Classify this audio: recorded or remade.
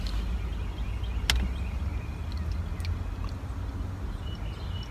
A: recorded